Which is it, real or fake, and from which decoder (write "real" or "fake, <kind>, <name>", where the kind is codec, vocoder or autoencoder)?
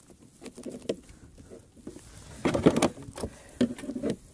real